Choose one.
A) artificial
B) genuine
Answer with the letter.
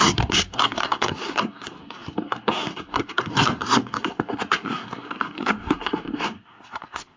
A